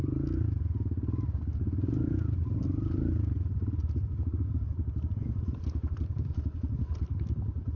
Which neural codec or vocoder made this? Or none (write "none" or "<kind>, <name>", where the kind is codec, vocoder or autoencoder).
none